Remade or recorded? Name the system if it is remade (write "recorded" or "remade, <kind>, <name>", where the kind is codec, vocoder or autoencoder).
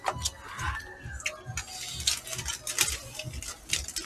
recorded